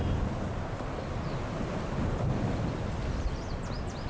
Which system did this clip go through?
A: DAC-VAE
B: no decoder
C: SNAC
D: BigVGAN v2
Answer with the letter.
B